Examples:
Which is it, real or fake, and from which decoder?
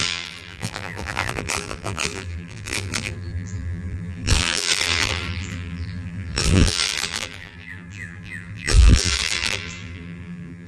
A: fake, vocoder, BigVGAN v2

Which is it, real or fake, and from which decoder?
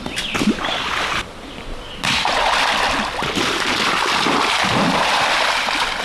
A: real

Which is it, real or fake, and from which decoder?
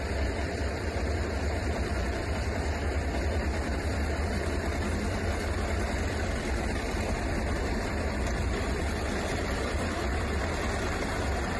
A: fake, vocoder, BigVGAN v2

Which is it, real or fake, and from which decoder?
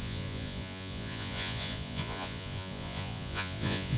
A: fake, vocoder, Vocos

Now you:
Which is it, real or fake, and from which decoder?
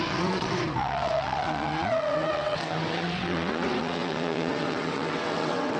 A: fake, vocoder, WaveNeXt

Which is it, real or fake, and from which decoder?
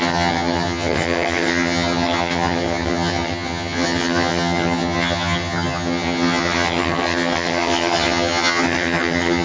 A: fake, vocoder, HiFi-GAN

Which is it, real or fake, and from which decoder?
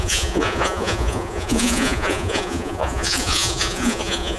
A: fake, vocoder, Vocos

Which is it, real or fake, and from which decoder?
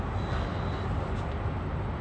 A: real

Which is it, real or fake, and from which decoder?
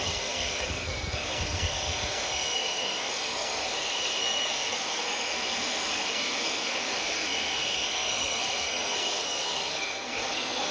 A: fake, codec, SNAC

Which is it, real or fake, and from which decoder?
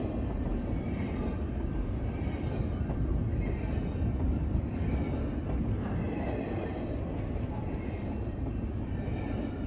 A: real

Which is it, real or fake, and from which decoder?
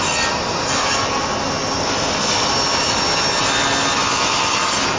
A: real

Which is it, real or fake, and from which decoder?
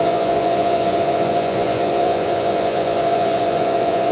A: fake, vocoder, Vocos